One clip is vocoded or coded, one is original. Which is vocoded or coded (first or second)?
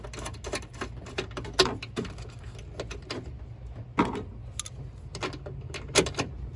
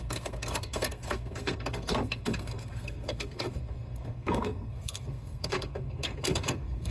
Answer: second